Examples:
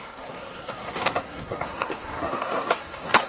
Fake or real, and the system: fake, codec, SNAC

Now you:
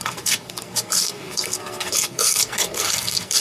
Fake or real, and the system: fake, codec, SNAC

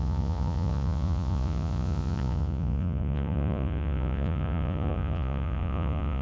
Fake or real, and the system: fake, vocoder, Vocos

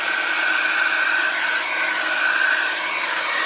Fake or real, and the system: real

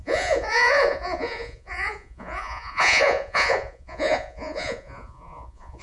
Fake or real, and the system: fake, vocoder, Vocos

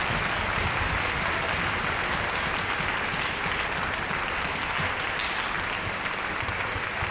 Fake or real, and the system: real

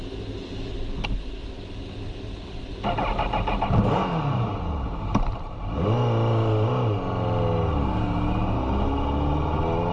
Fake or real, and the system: real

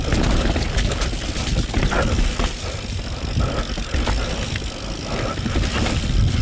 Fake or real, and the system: real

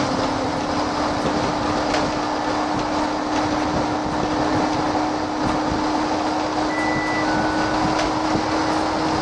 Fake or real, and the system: real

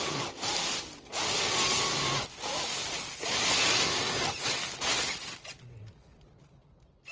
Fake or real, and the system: real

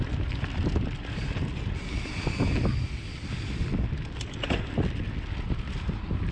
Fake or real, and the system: real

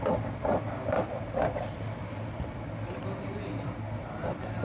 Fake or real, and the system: real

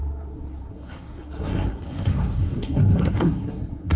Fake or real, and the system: fake, codec, SNAC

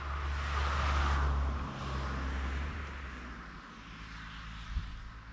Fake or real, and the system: real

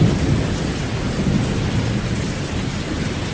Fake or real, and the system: real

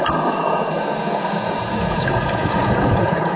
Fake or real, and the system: fake, vocoder, Vocos